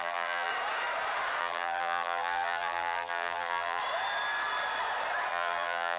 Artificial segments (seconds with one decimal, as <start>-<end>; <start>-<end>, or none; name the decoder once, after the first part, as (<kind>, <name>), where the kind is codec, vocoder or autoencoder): 0.0-0.5 (vocoder, BigVGAN v2); 1.4-3.8; 5.3-6.0